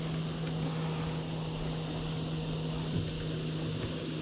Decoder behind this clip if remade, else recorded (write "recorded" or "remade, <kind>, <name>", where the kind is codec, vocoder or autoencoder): recorded